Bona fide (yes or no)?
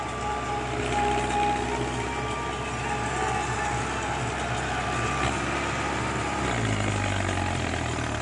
yes